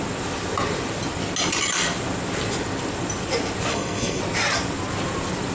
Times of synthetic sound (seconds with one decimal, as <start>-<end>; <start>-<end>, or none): 3.7-4.2